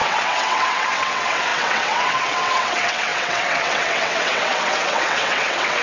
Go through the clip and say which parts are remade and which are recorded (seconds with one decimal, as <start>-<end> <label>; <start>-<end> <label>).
0.0-5.8 remade